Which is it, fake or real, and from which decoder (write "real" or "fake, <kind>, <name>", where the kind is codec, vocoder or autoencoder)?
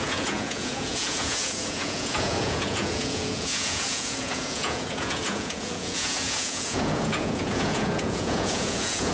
fake, vocoder, Vocos